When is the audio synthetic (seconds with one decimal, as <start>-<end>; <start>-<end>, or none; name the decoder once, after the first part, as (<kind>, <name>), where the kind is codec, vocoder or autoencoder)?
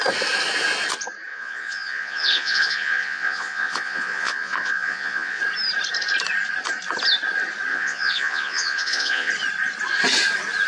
1.3-5.4 (vocoder, Vocos); 7.7-9.3